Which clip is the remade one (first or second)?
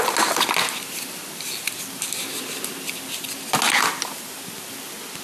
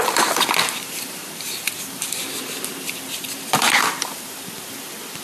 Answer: second